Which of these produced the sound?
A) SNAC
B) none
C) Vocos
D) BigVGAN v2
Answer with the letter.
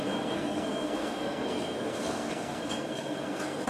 A